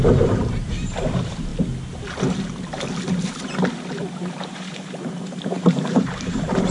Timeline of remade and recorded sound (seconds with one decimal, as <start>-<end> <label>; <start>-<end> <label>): 0.0-1.5 remade; 1.5-4.5 recorded; 4.5-6.7 remade